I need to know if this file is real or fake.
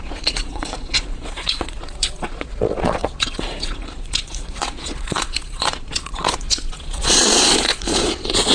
fake